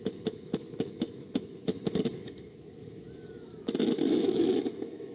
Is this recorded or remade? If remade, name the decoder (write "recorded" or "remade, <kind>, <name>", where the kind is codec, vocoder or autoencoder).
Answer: remade, autoencoder, DAC-VAE